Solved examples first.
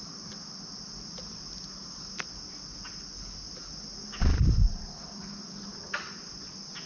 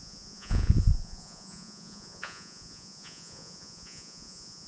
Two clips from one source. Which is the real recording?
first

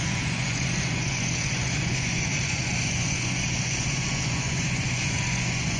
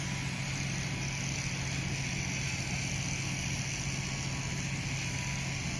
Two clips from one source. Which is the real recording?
second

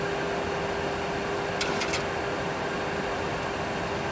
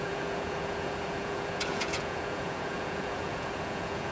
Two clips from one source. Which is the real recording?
first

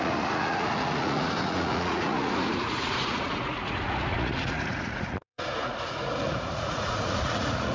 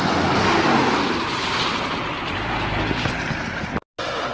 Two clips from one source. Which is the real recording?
second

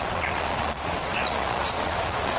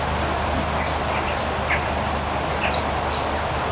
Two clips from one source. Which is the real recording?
second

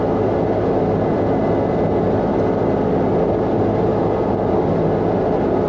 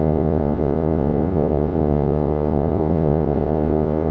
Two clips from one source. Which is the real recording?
first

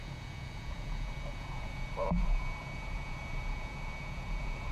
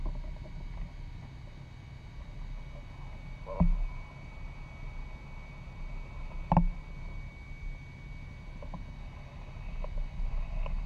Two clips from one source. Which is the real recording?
second